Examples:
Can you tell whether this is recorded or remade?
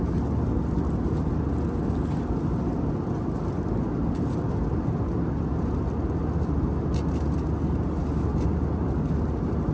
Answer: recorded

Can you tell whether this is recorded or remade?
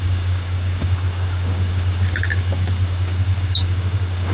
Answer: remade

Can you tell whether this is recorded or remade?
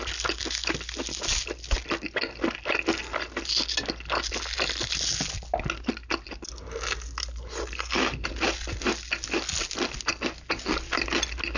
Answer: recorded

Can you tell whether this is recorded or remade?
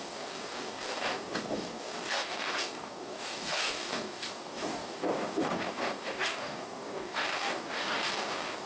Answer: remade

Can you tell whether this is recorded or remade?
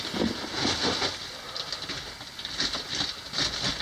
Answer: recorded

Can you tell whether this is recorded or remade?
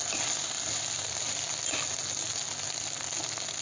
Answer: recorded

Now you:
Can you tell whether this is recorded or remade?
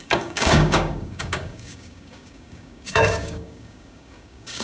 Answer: remade